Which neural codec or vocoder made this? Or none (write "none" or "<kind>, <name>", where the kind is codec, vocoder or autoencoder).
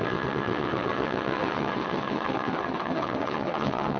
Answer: vocoder, WaveNeXt